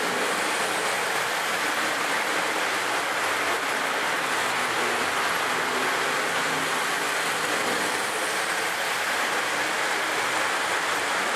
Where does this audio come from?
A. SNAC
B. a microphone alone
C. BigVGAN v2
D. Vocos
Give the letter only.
B